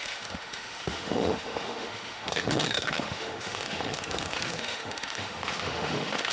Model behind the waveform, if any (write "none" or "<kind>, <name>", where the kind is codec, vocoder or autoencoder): autoencoder, DAC-VAE